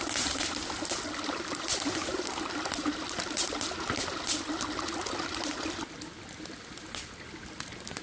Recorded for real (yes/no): yes